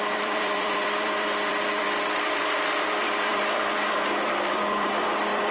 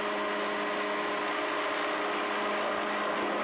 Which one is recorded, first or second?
second